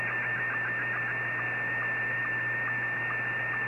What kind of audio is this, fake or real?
real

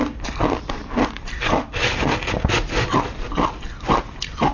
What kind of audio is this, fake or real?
real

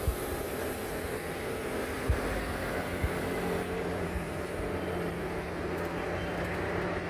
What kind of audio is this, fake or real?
real